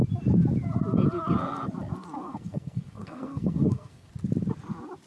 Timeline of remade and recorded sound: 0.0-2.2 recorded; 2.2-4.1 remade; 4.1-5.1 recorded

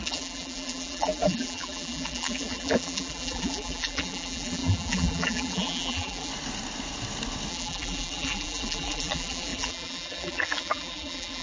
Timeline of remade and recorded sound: 0.0-6.3 remade; 6.3-7.5 recorded; 7.5-11.4 remade

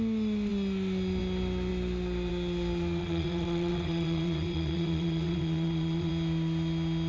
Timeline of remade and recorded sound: 0.0-3.0 recorded; 3.0-6.1 remade; 6.1-7.1 recorded

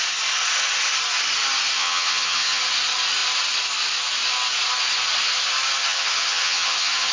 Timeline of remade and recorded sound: 0.0-1.8 recorded; 1.8-2.6 remade; 2.6-5.8 recorded; 5.8-7.1 remade